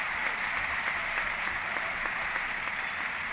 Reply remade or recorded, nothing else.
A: recorded